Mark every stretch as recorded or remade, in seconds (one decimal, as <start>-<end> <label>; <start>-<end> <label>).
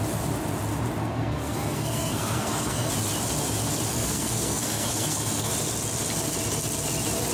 0.0-1.0 recorded; 1.0-2.9 remade; 2.9-3.9 recorded; 3.9-5.5 remade; 5.5-7.3 recorded